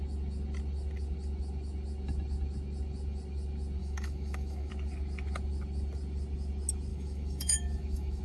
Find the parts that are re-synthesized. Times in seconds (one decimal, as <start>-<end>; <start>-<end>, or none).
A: 3.8-4.7; 6.9-8.2